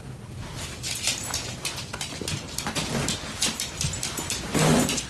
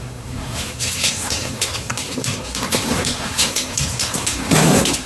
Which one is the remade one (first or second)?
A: second